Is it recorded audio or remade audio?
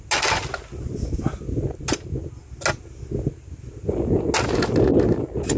recorded